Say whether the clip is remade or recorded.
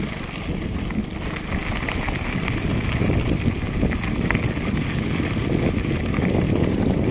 recorded